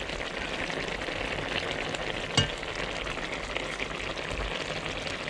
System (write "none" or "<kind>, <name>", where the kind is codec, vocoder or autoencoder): none